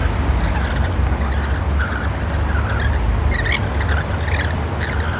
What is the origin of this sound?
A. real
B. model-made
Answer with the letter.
A